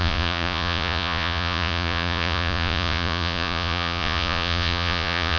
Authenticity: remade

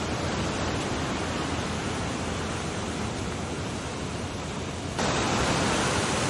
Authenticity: recorded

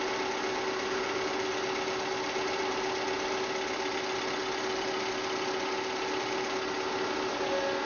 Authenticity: recorded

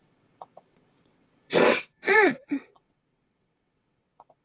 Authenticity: remade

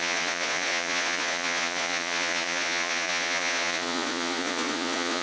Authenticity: remade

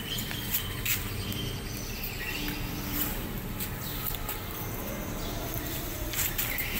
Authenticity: recorded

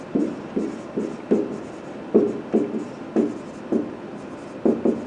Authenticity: recorded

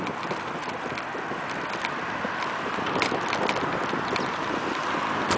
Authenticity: recorded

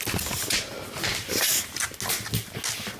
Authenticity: recorded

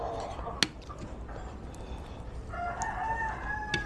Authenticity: recorded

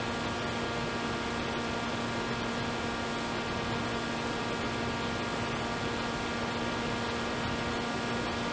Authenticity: recorded